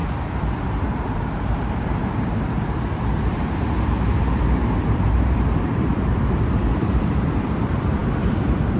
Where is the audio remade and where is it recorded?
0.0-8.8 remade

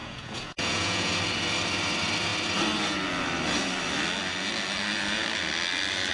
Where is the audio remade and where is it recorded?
0.0-1.1 remade; 1.1-6.1 recorded

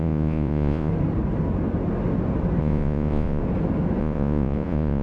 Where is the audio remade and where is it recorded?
0.0-0.9 remade; 0.9-2.6 recorded; 2.6-3.4 remade; 3.4-4.0 recorded; 4.0-5.0 remade

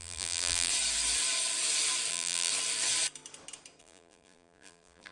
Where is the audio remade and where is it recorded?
0.0-0.7 remade; 0.7-2.1 recorded; 2.1-2.5 remade; 2.5-3.8 recorded; 3.8-5.1 remade

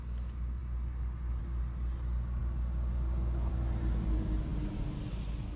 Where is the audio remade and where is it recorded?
0.0-5.6 recorded